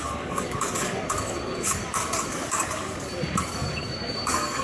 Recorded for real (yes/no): no